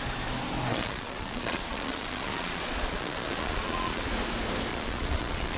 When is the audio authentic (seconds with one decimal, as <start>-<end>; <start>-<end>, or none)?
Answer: 0.0-0.7; 4.1-4.7